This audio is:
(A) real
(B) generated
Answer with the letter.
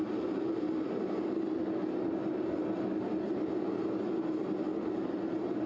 A